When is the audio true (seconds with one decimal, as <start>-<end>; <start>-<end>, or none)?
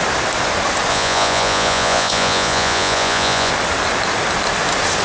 0.0-0.9; 3.5-5.0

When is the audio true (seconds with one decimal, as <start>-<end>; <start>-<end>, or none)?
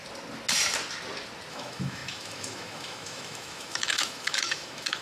0.0-1.5